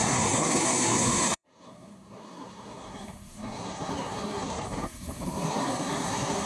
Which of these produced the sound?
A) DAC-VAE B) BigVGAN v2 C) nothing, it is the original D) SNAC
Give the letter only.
D